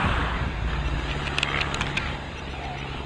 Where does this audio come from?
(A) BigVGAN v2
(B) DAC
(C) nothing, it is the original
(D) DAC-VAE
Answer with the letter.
C